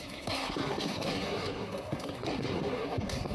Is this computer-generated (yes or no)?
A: yes